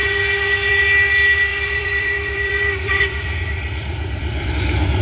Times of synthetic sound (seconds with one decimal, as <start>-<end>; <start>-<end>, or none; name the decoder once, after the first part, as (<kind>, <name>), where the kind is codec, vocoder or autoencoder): 1.5-4.5 (vocoder, BigVGAN v2)